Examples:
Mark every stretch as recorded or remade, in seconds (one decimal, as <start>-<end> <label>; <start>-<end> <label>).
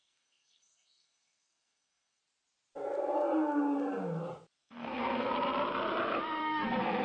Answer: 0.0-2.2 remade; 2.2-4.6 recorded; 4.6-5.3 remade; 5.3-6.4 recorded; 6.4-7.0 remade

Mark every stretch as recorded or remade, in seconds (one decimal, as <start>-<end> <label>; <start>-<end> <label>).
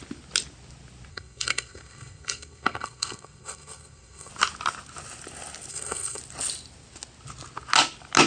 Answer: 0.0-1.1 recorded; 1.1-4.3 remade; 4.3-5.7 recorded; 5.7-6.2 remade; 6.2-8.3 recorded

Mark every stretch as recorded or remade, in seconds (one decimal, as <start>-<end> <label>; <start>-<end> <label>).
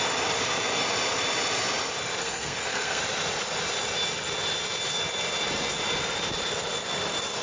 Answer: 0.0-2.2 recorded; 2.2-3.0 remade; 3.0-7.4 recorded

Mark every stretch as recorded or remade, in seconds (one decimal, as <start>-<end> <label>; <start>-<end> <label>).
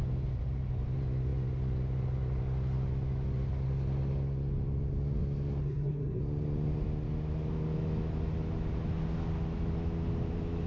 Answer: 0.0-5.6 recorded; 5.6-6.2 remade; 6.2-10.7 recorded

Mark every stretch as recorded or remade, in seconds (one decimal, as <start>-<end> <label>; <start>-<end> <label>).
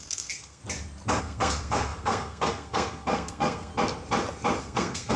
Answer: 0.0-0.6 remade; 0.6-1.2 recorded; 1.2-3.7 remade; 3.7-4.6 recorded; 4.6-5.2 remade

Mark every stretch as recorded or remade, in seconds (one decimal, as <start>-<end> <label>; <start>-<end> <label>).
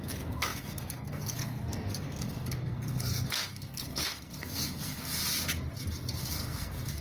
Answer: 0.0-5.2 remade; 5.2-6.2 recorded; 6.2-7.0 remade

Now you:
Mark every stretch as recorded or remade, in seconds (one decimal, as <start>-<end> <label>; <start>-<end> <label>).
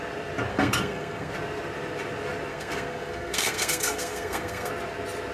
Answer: 0.0-0.5 recorded; 0.5-1.3 remade; 1.3-2.5 recorded; 2.5-4.7 remade; 4.7-5.3 recorded